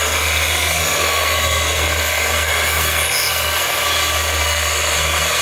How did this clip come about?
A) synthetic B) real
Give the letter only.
A